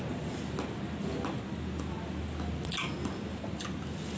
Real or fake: real